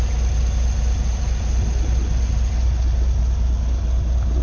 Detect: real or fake real